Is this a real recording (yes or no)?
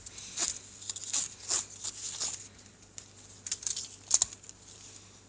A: yes